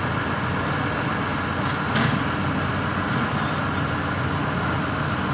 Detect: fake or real real